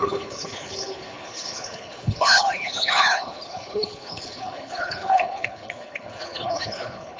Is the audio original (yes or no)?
no